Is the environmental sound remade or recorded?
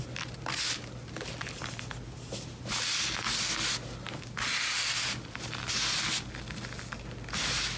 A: recorded